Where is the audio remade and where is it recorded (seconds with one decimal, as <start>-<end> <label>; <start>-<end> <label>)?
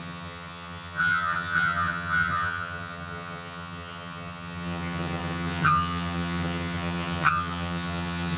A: 0.0-8.4 remade